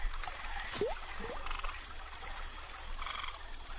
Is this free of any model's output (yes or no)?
yes